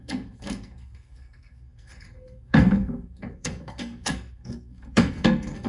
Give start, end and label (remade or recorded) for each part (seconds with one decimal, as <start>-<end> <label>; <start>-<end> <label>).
0.0-5.7 remade